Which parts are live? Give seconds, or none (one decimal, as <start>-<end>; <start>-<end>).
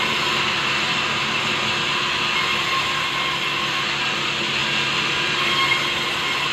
0.0-6.5